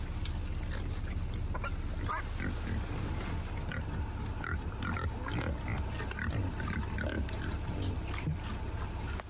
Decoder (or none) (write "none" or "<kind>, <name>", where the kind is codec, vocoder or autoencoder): none